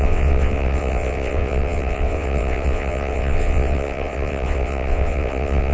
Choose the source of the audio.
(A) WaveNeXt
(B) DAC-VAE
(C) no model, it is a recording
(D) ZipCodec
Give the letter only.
A